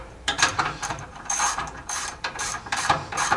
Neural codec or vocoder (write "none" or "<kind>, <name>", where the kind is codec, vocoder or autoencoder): vocoder, BigVGAN v2